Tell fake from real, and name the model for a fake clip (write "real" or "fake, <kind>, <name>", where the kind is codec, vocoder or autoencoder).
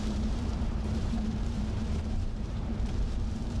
fake, vocoder, BigVGAN v2